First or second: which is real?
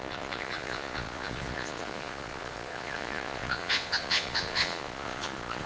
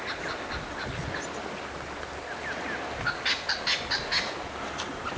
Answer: second